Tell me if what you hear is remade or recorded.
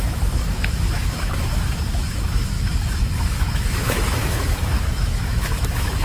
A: remade